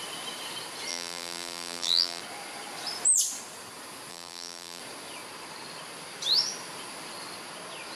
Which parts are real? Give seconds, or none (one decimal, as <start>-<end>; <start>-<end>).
0.0-0.9; 2.2-4.1; 4.8-8.0